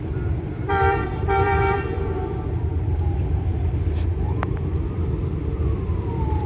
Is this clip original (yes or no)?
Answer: no